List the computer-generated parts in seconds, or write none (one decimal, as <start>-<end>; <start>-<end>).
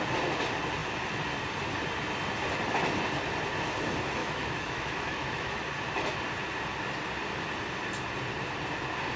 4.2-5.6